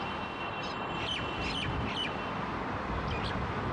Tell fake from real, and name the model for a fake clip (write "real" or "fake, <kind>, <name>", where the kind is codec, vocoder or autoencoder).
real